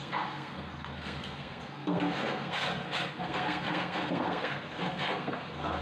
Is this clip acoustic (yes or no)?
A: no